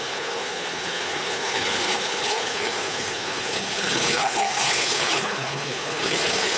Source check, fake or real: fake